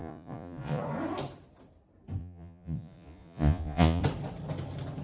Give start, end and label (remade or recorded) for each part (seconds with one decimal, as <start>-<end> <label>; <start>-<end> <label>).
0.0-0.8 remade; 0.8-2.2 recorded; 2.2-4.0 remade; 4.0-5.0 recorded